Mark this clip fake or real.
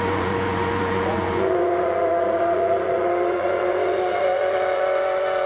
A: fake